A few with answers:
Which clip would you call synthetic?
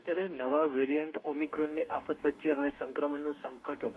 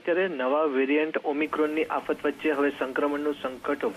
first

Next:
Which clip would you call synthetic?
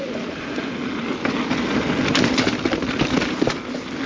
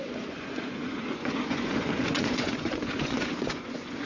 second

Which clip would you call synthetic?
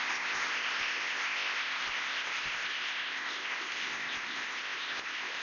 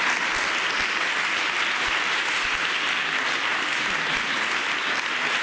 first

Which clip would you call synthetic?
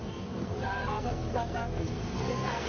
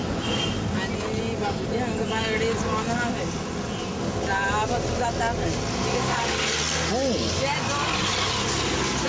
first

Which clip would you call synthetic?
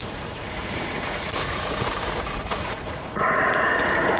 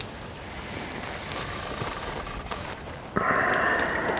first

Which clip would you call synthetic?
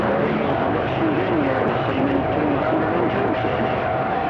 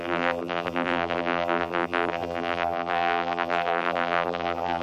second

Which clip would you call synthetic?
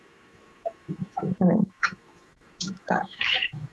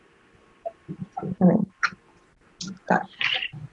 first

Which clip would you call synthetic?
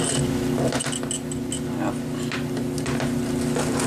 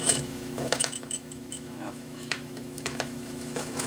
second